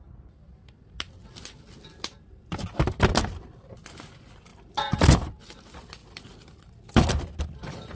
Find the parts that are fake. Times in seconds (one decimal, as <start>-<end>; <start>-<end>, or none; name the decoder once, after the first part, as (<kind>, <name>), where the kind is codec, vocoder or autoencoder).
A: 4.5-5.4 (vocoder, BigVGAN v2)